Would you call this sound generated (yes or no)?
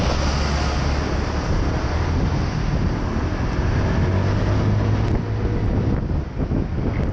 no